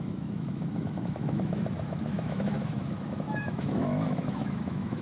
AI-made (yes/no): yes